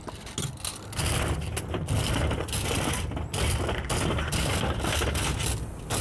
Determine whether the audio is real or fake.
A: real